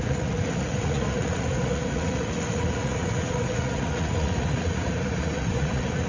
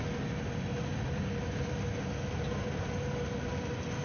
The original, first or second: second